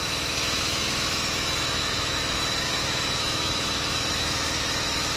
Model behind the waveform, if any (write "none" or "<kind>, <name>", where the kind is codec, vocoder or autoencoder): autoencoder, DAC-VAE